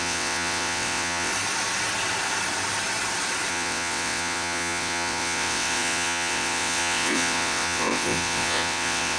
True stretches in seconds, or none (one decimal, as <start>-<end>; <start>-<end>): 1.3-3.5